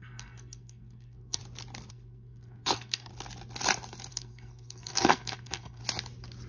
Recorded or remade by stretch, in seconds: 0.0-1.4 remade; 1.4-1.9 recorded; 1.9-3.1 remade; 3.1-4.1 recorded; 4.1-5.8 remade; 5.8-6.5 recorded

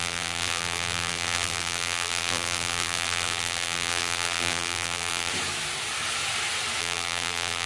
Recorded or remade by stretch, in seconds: 0.0-5.3 remade; 5.3-6.8 recorded; 6.8-7.7 remade

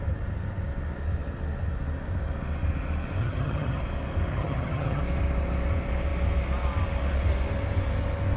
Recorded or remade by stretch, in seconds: 0.0-3.2 recorded; 3.2-3.8 remade; 3.8-4.3 recorded; 4.3-5.0 remade; 5.0-8.4 recorded

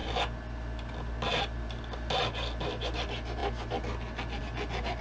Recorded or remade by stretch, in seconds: 0.0-5.0 recorded